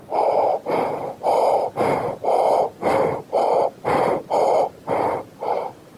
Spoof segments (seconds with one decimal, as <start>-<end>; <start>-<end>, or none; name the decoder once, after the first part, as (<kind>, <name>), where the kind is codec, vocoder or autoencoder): 0.0-0.5 (vocoder, BigVGAN v2); 4.1-6.0